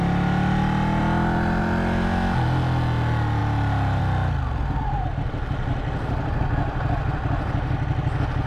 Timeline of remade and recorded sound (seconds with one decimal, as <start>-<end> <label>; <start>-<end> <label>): 0.0-1.0 recorded; 1.0-1.6 remade; 1.6-8.5 recorded